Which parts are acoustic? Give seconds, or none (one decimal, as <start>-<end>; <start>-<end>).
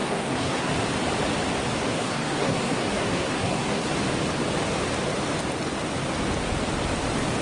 0.7-1.8; 3.9-7.4